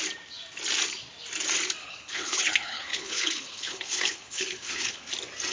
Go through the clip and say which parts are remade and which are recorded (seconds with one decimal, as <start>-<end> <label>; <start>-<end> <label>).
0.0-1.8 recorded; 1.8-5.1 remade; 5.1-5.5 recorded